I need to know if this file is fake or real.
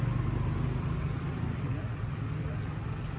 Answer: real